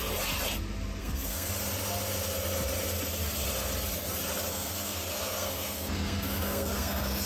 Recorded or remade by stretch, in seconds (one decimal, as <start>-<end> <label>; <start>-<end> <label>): 0.0-1.0 recorded; 1.0-1.5 remade; 1.5-4.5 recorded; 4.5-7.3 remade